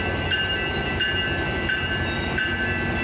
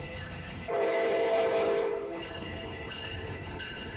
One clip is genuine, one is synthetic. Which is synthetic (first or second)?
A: second